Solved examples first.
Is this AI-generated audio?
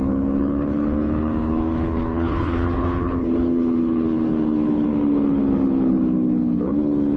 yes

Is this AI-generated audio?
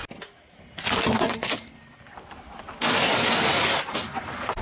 no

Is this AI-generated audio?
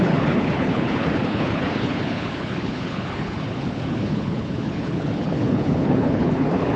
yes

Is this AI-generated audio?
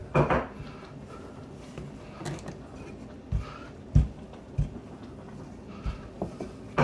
no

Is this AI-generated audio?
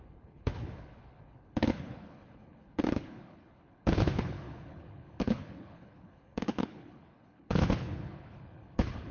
yes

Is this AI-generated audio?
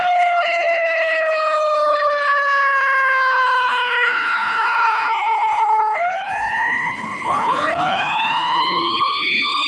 yes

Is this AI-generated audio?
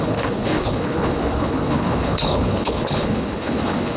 yes